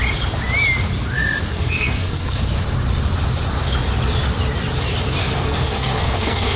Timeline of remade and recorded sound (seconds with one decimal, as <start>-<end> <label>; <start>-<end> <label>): 0.0-1.5 recorded; 1.5-2.4 remade; 2.4-5.2 recorded; 5.2-6.6 remade

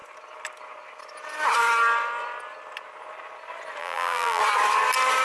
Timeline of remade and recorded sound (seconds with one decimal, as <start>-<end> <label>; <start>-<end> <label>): 0.0-3.8 recorded; 3.8-4.4 remade; 4.4-5.2 recorded

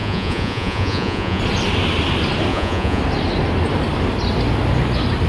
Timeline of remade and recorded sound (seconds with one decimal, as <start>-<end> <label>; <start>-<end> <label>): 0.0-1.4 remade; 1.4-2.5 recorded; 2.5-3.0 remade; 3.0-5.3 recorded

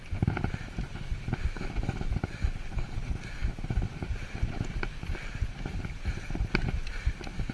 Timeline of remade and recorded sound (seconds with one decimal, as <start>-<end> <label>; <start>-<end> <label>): 0.0-7.5 recorded

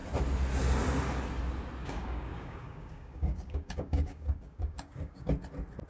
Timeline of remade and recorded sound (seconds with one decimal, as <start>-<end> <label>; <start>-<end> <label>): 0.0-1.8 recorded; 1.8-5.3 remade; 5.3-5.9 recorded